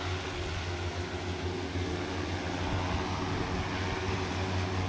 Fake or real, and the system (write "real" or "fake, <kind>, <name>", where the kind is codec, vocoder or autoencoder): real